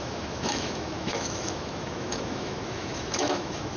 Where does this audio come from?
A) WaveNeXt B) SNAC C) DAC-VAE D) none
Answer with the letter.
C